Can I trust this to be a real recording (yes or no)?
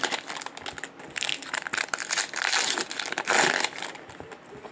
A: yes